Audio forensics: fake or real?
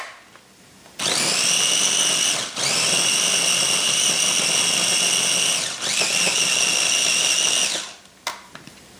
real